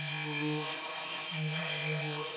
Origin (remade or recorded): remade